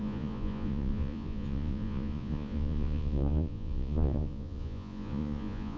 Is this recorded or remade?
remade